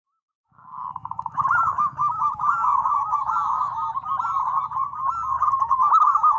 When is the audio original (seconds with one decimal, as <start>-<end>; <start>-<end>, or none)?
3.9-5.5